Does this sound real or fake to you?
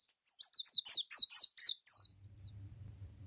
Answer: real